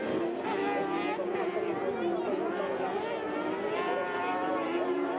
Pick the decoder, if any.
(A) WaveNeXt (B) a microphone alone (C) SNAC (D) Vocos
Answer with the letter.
B